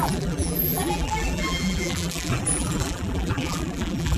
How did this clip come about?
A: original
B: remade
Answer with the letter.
B